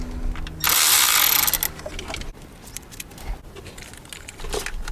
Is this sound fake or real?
real